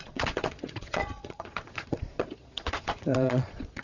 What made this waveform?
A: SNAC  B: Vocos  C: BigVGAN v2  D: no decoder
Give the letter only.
B